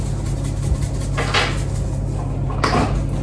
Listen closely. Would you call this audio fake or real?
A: real